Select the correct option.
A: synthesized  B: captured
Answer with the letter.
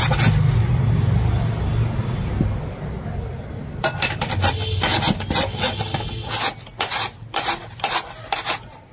B